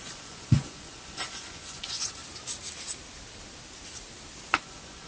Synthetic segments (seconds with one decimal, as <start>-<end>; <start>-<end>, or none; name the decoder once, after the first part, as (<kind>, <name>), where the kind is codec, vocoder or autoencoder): 0.0-2.2 (vocoder, Vocos); 4.6-5.1